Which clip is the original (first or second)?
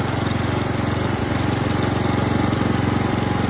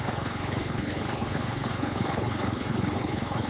first